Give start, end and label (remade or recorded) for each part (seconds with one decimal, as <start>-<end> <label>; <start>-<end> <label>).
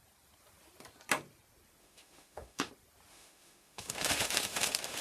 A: 0.0-1.8 recorded; 1.8-2.7 remade; 2.7-3.1 recorded; 3.1-5.0 remade